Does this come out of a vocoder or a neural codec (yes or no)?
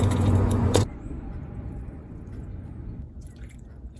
yes